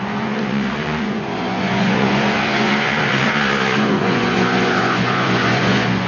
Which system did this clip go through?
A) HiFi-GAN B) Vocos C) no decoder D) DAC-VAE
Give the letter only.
B